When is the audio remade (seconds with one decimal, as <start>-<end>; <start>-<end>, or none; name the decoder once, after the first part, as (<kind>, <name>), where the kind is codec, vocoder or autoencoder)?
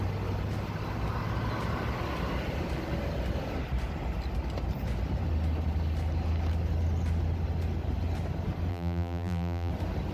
8.7-9.7 (vocoder, BigVGAN v2)